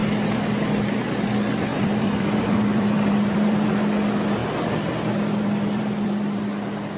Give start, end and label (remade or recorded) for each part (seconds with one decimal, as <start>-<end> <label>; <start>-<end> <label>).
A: 0.0-1.7 recorded; 1.7-3.8 remade; 3.8-4.4 recorded; 4.4-6.4 remade; 6.4-7.0 recorded